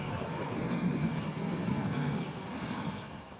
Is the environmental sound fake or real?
fake